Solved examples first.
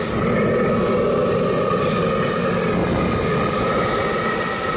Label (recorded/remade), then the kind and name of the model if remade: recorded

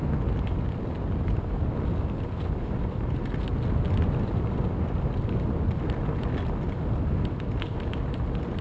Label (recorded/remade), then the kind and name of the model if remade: recorded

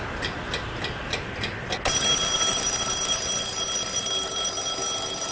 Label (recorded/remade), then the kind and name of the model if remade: recorded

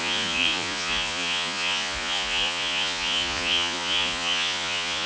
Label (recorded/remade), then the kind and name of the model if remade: remade, vocoder, Vocos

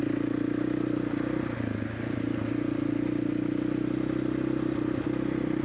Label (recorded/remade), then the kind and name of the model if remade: recorded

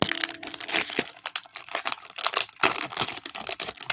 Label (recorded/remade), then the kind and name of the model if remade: recorded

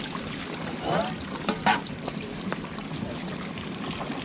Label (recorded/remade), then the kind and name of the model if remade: recorded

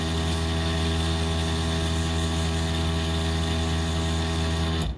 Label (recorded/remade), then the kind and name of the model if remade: recorded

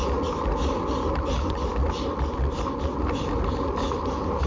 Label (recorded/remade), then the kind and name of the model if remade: recorded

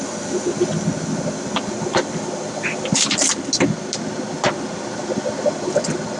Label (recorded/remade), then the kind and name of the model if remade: recorded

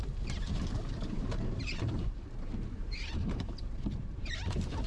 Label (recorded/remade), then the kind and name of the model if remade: remade, vocoder, BigVGAN v2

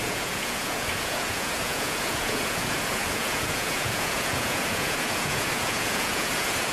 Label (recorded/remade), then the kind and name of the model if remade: remade, vocoder, Vocos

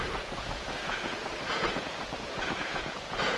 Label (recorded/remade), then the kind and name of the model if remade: remade, vocoder, Vocos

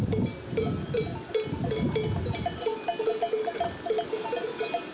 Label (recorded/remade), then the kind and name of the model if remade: recorded